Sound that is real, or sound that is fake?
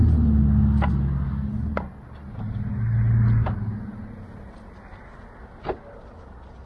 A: real